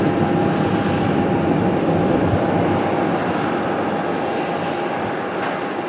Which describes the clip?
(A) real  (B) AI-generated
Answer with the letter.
A